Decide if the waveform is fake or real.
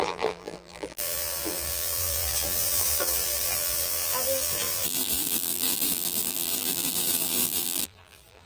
fake